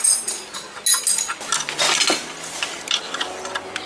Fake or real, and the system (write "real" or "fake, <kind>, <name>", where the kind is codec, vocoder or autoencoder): real